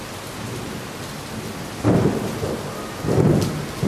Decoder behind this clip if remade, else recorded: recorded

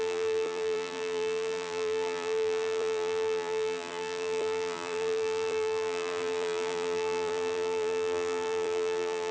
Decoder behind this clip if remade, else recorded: remade, vocoder, BigVGAN v2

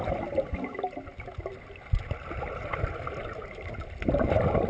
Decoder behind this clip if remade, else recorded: recorded